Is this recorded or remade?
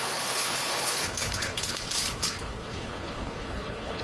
remade